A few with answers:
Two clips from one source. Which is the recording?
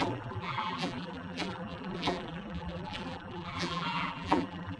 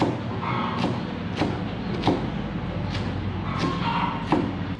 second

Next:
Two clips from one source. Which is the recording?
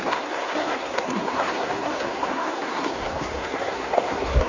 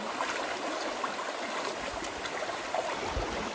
second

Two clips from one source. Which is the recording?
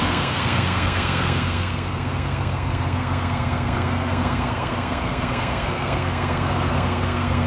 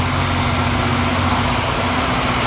second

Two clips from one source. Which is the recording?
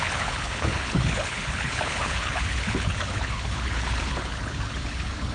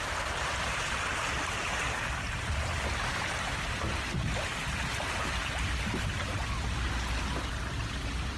second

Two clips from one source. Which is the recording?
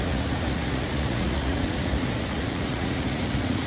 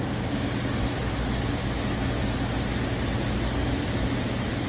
second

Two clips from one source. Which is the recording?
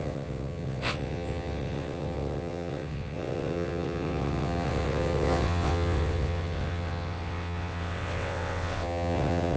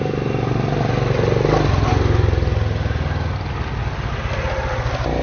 second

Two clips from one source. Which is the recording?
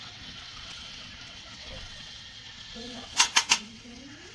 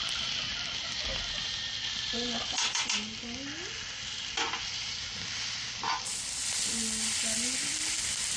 second